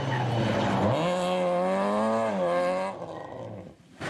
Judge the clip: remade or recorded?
recorded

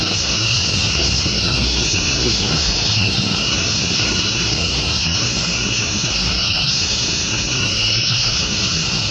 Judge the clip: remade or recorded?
remade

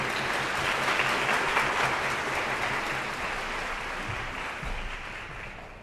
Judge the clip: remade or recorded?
recorded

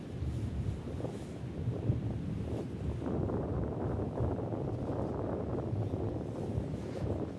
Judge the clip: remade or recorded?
recorded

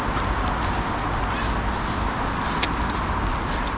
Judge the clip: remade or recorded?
recorded